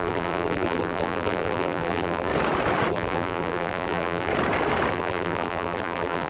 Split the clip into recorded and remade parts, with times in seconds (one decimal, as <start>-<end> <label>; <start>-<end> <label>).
0.0-2.3 remade; 2.3-2.9 recorded; 2.9-4.3 remade; 4.3-4.9 recorded; 4.9-6.3 remade